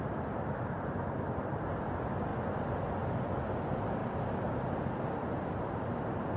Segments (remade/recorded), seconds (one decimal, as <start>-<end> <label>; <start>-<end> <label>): 0.0-4.0 recorded; 4.0-6.4 remade